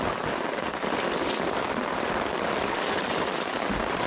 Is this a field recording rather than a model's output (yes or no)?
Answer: yes